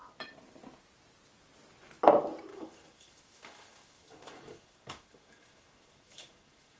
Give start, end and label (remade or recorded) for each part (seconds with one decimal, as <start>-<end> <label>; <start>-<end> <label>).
0.0-2.5 recorded; 2.5-6.8 remade